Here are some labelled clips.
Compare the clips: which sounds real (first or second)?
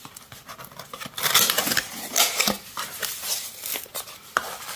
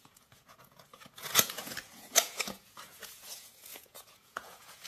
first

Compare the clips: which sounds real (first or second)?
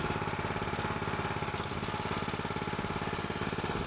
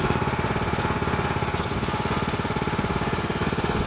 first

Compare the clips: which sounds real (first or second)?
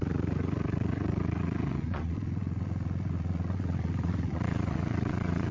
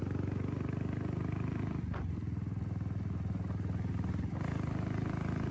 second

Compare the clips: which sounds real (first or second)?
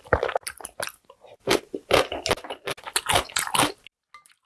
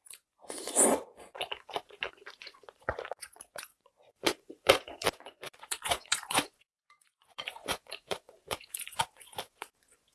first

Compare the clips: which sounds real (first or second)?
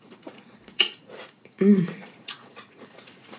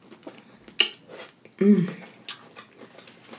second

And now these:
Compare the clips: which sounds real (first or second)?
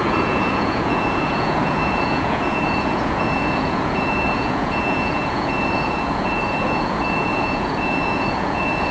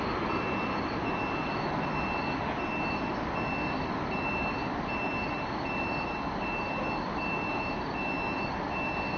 second